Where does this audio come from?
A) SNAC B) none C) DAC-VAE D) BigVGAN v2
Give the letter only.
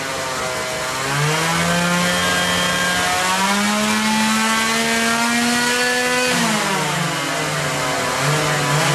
B